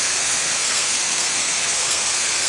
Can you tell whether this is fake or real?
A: fake